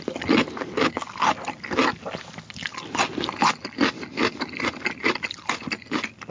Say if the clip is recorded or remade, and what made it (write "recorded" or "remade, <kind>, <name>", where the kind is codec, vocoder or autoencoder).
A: recorded